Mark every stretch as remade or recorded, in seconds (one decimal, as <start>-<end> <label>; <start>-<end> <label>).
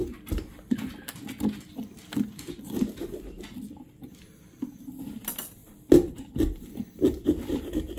0.0-8.0 recorded